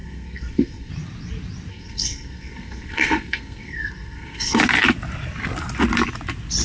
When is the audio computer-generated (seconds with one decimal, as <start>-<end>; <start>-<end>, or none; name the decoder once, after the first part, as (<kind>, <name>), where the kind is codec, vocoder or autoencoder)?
0.0-0.9 (codec, SNAC); 1.7-4.6